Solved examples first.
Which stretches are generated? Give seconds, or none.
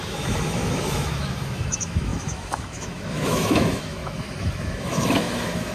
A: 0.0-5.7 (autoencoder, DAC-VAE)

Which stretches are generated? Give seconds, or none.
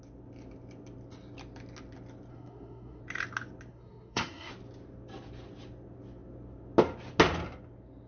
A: 2.3-3.0 (codec, SNAC); 3.7-4.5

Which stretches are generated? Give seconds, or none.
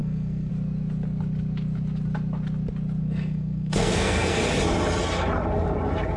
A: 0.0-0.5 (codec, SNAC); 3.0-4.4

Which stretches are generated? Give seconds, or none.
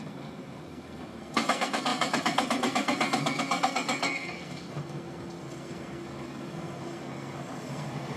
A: 0.0-8.2 (codec, SNAC)